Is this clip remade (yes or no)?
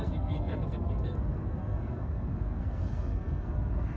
yes